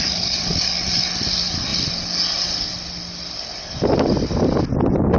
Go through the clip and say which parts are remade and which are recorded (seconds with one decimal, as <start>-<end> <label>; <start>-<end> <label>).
0.0-5.2 recorded